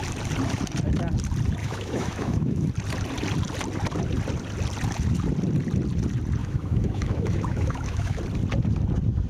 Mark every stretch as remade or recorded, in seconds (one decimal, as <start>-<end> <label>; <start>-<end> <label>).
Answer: 0.0-1.6 recorded; 1.6-2.7 remade; 2.7-6.4 recorded; 6.4-8.2 remade; 8.2-9.3 recorded